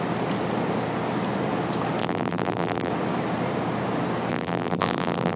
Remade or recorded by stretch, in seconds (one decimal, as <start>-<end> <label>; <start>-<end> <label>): 0.0-2.0 recorded; 2.0-2.9 remade; 2.9-4.3 recorded; 4.3-5.4 remade